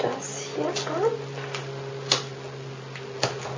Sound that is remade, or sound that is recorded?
recorded